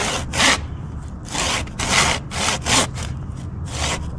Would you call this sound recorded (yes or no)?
yes